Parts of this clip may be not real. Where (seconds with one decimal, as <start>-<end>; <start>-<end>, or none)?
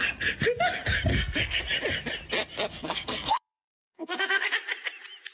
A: 1.1-1.6; 2.7-4.5